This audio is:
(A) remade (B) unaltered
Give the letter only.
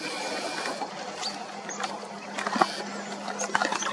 B